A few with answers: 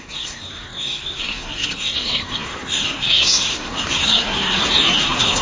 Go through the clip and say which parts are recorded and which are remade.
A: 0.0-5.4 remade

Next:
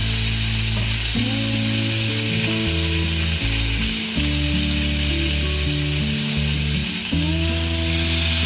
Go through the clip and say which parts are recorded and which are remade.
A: 0.0-8.5 recorded

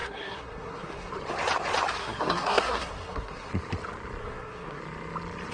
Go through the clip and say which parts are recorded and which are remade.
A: 0.0-1.1 remade; 1.1-2.0 recorded; 2.0-3.5 remade; 3.5-4.2 recorded; 4.2-4.8 remade; 4.8-5.5 recorded

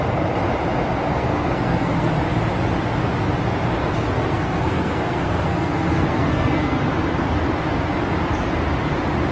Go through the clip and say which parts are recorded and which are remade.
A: 0.0-1.1 recorded; 1.1-2.1 remade; 2.1-3.8 recorded; 3.8-6.8 remade; 6.8-9.3 recorded

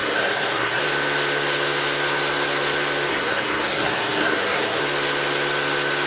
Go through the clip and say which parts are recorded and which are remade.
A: 0.0-0.8 remade; 0.8-3.1 recorded; 3.1-4.8 remade; 4.8-6.1 recorded